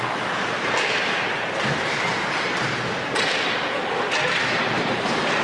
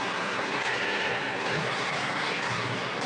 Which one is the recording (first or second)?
first